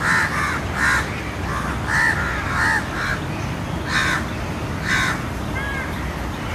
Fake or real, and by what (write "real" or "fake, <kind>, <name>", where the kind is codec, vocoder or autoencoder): real